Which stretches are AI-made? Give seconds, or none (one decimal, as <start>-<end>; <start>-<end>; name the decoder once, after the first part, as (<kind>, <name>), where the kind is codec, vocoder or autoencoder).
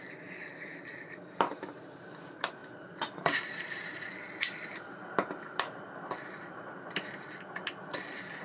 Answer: 2.6-4.1 (vocoder, BigVGAN v2)